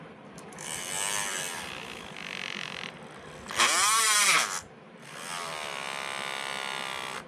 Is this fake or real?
fake